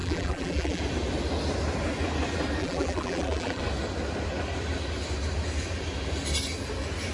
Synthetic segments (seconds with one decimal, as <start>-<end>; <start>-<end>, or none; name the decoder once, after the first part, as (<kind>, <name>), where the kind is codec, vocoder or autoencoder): 0.0-0.8 (vocoder, BigVGAN v2); 2.6-3.6